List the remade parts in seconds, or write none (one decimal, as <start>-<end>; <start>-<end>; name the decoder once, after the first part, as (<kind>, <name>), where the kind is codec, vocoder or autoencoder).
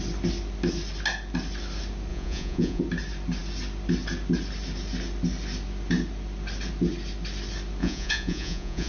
2.1-2.8 (vocoder, Vocos); 7.8-8.9